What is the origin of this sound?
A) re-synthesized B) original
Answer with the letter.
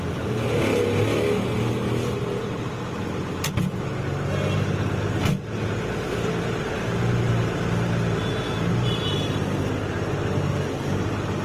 B